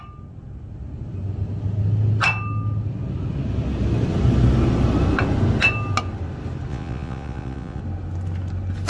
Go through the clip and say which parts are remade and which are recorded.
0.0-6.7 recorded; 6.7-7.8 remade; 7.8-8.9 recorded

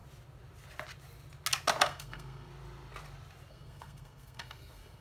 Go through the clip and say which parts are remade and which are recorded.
0.0-1.8 recorded; 1.8-2.5 remade; 2.5-3.5 recorded; 3.5-5.0 remade

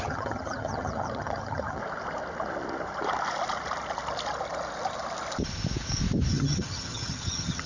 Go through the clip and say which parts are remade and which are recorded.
0.0-1.8 remade; 1.8-6.3 recorded; 6.3-7.7 remade

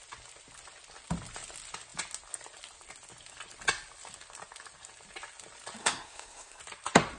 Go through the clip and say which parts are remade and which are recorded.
0.0-5.8 recorded; 5.8-6.6 remade; 6.6-7.2 recorded